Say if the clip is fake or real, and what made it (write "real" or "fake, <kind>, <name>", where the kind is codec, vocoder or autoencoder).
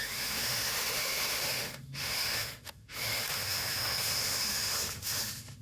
fake, autoencoder, DAC-VAE